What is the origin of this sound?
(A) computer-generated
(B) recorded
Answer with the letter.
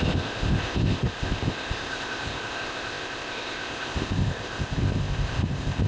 A